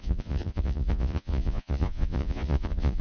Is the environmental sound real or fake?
fake